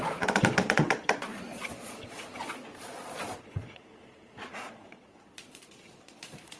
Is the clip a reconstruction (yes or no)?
yes